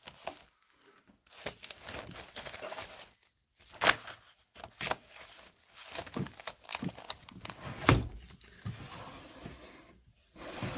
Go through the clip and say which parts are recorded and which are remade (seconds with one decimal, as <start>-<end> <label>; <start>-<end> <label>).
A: 0.0-10.8 recorded